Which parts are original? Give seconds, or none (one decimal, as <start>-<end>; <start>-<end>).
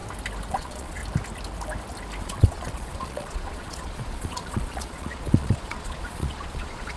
0.0-0.5; 1.0-2.2